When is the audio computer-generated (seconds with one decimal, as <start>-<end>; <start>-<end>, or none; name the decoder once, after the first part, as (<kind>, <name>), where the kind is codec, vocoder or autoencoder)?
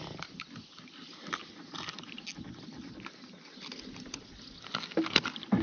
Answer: none